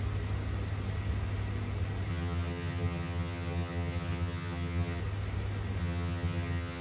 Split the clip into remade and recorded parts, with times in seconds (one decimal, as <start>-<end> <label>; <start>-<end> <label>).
0.0-2.1 recorded; 2.1-5.0 remade; 5.0-5.8 recorded; 5.8-6.8 remade

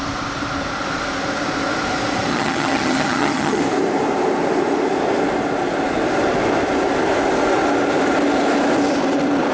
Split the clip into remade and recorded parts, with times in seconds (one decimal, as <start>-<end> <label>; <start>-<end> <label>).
0.0-2.3 recorded; 2.3-3.6 remade; 3.6-9.5 recorded

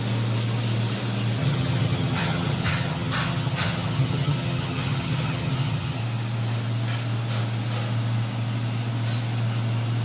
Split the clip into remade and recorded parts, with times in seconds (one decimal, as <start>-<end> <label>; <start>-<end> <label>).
0.0-1.4 recorded; 1.4-6.0 remade; 6.0-10.0 recorded